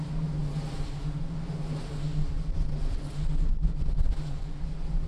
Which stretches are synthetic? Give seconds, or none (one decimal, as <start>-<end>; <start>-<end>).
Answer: none